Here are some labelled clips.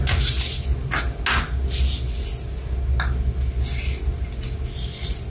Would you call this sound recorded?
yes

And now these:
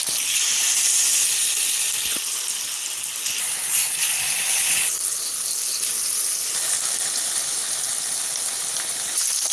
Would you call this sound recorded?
yes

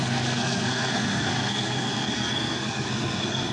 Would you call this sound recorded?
no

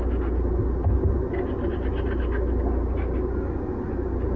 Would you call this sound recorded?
yes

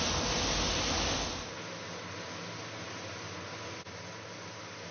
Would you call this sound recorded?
yes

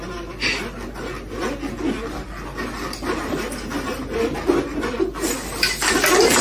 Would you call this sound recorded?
yes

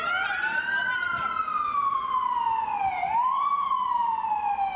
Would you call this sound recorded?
yes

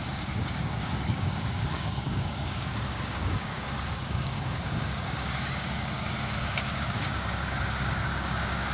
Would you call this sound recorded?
no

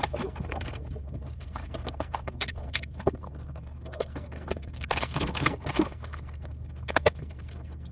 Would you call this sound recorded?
no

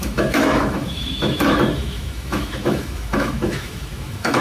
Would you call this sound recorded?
no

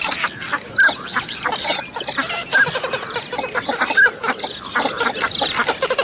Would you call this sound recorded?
yes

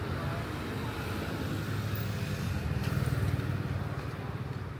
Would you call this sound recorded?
yes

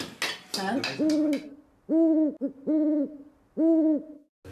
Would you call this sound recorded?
yes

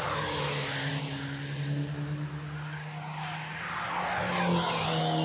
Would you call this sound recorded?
yes